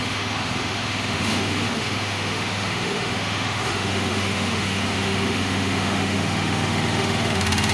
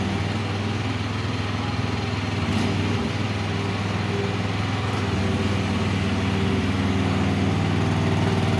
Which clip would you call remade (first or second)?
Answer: first